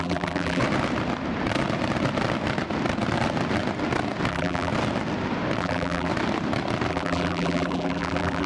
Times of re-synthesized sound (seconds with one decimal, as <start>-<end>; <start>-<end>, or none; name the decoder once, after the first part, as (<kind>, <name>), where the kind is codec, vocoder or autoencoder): 0.0-0.6 (vocoder, BigVGAN v2); 4.3-4.7; 5.6-6.1; 6.9-8.5